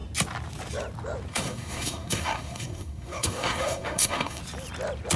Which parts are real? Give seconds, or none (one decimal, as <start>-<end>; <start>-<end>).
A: 0.0-1.3; 4.4-5.2